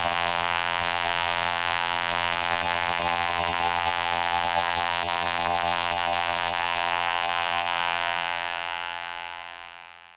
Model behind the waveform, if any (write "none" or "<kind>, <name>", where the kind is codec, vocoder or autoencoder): vocoder, BigVGAN v2